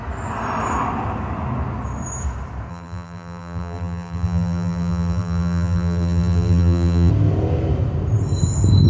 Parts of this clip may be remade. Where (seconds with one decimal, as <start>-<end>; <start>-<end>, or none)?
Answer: 2.7-7.1